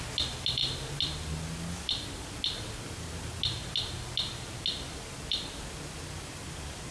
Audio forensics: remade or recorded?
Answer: recorded